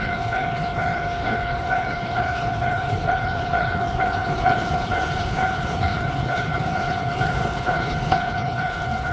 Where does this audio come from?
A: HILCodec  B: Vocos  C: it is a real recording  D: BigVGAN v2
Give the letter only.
A